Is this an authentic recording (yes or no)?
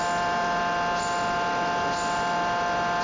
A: yes